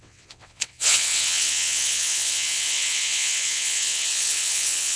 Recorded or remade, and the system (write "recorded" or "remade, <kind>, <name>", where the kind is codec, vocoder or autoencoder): remade, vocoder, WaveNeXt